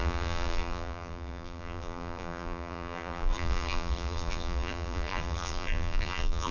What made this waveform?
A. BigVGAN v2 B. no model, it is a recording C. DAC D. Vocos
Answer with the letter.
A